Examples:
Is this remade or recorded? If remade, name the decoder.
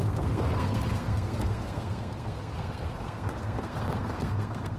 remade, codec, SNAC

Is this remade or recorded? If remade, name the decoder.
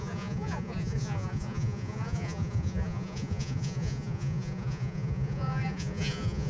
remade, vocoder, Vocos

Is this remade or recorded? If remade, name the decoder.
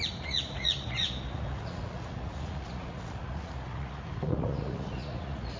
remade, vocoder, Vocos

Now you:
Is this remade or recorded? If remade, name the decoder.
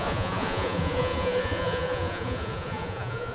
remade, vocoder, Vocos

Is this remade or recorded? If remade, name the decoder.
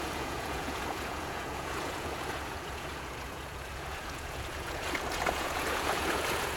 remade, vocoder, Vocos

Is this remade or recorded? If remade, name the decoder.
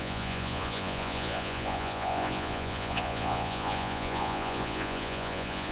remade, vocoder, Vocos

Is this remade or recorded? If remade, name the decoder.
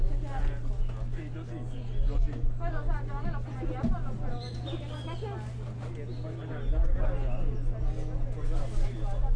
recorded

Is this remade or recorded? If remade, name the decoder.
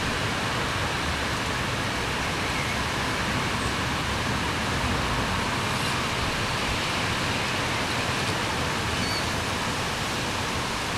recorded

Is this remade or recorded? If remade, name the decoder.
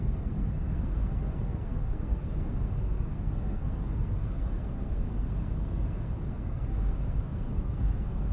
remade, codec, SNAC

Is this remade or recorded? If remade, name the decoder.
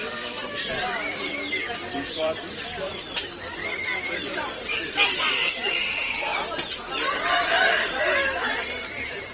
remade, vocoder, BigVGAN v2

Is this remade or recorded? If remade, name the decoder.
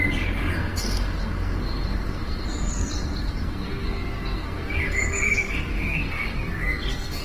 remade, codec, SNAC